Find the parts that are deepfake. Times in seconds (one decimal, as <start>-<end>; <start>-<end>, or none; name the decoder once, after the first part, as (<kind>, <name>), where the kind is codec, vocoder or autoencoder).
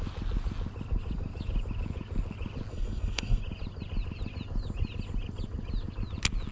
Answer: 2.7-3.4 (codec, SNAC)